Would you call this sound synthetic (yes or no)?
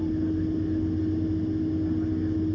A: no